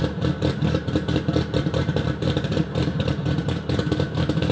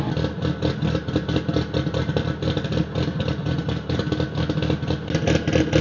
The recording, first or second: second